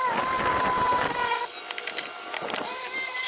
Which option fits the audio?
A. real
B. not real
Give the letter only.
A